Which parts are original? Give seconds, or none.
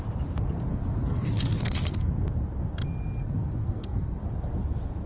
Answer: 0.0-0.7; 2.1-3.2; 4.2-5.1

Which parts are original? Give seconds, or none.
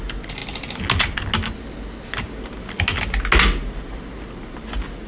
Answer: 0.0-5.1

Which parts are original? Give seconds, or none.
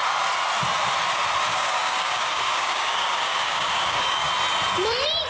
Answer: 0.0-1.5; 4.3-5.3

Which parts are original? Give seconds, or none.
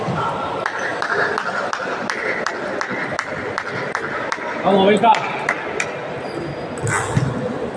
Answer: 0.0-7.8